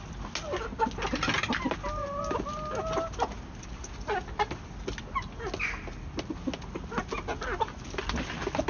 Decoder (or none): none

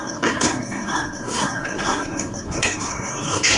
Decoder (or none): codec, SNAC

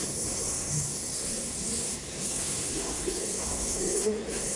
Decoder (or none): codec, SNAC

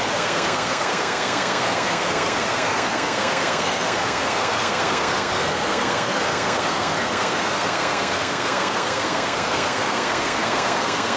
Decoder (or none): codec, SNAC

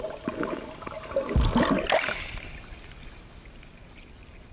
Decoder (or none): none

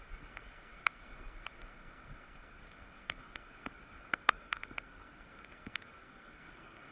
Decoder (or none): codec, SNAC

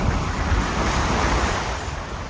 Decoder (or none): none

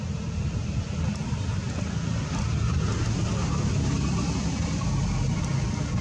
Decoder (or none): none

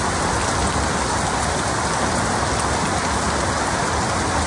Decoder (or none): none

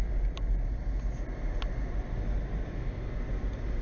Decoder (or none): none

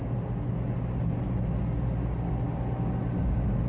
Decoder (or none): none